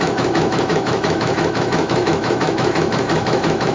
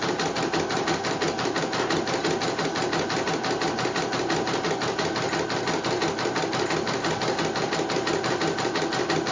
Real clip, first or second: second